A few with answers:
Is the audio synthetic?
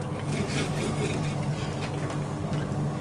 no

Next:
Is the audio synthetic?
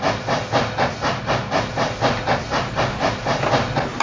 no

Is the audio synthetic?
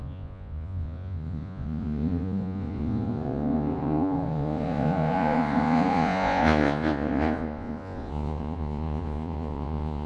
yes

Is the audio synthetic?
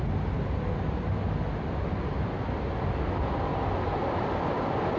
no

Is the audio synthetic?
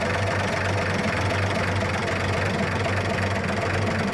no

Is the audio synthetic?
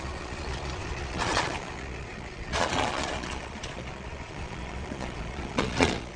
yes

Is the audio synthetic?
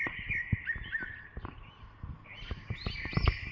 no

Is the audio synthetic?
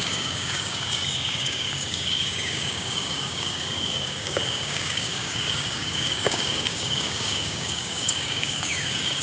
yes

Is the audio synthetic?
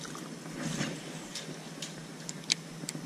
no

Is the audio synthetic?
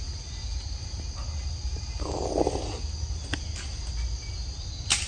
no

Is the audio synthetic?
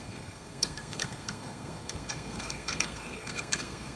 yes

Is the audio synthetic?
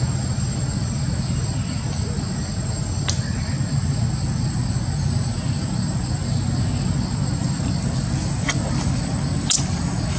no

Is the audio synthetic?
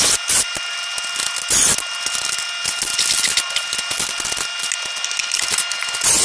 no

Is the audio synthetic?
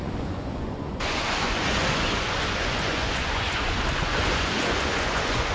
yes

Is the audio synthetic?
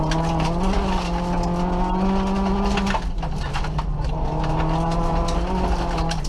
no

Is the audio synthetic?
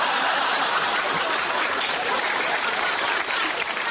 yes